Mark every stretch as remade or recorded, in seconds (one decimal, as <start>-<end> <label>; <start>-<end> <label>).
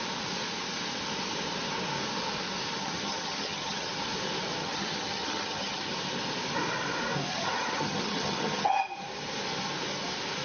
0.0-2.8 recorded; 2.8-3.9 remade; 3.9-4.6 recorded; 4.6-5.9 remade; 5.9-7.3 recorded; 7.3-8.8 remade; 8.8-10.4 recorded